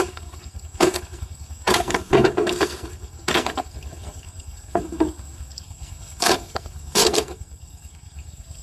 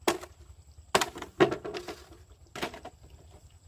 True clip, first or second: second